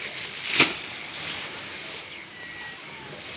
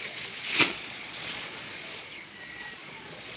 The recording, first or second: first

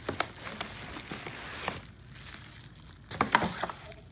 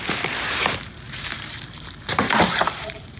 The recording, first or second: first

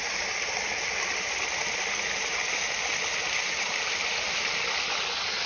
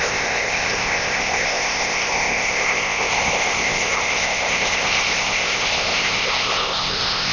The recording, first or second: first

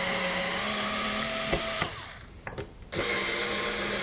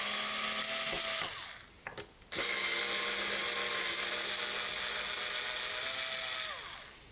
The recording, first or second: second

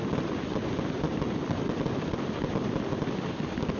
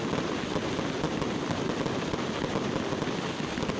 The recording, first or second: second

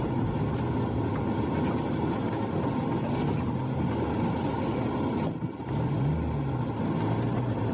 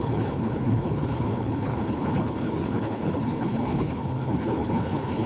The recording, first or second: first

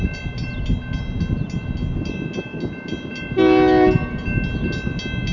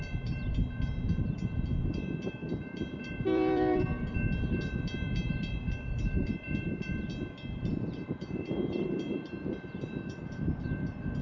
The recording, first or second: first